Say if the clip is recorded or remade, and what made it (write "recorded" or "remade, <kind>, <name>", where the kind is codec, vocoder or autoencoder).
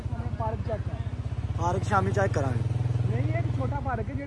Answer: recorded